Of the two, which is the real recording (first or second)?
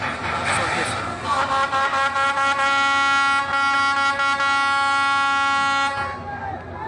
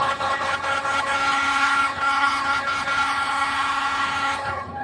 first